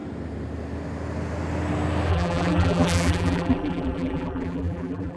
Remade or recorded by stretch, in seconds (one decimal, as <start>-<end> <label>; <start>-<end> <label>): 0.0-2.1 recorded; 2.1-5.2 remade